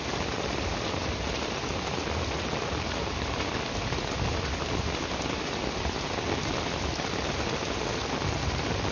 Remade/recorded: recorded